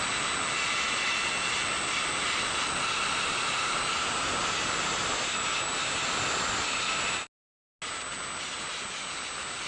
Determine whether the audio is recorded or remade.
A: recorded